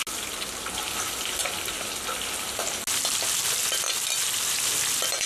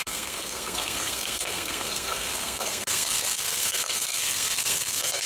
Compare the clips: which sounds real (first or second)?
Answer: first